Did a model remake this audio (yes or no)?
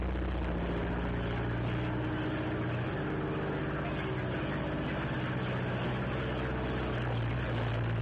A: no